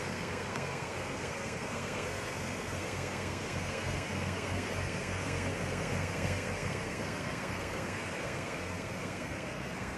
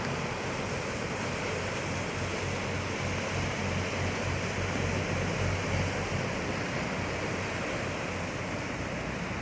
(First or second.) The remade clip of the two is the first